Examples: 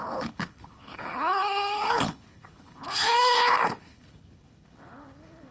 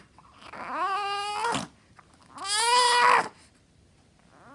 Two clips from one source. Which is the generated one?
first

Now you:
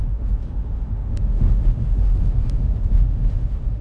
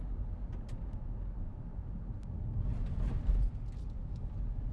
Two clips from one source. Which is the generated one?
first